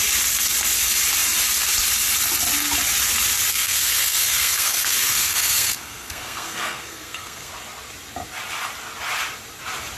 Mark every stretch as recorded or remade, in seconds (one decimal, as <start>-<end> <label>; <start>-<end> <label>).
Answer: 0.0-3.5 recorded; 3.5-7.5 remade; 7.5-10.0 recorded